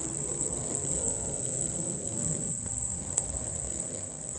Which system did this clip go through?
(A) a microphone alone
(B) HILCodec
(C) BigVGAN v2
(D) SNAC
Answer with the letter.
D